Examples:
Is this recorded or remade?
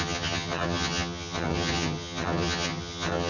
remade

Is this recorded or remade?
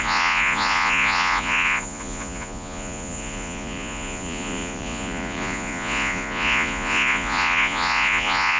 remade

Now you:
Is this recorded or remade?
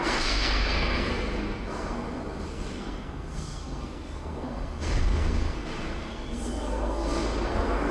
remade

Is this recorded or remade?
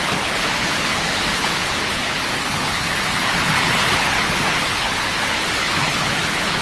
remade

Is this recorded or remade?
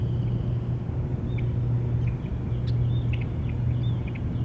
recorded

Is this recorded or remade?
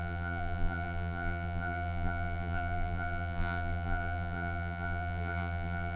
remade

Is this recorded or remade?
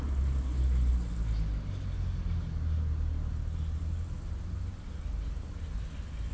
recorded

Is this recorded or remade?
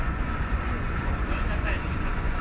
remade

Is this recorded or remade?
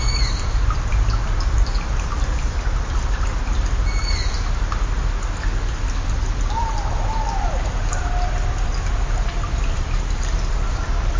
remade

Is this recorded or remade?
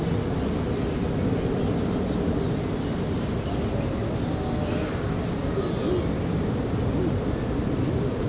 recorded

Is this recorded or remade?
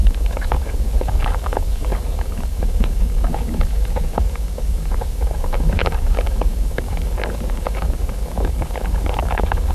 remade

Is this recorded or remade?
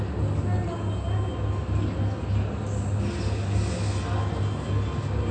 recorded